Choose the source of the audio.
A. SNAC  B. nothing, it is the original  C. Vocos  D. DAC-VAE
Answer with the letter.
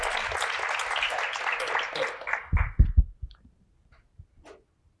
B